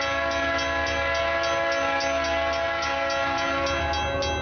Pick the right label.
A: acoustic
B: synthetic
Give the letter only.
A